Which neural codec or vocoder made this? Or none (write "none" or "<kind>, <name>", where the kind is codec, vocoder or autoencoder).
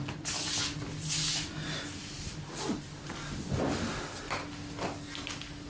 none